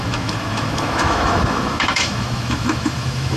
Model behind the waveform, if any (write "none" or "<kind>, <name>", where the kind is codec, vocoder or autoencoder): autoencoder, DAC-VAE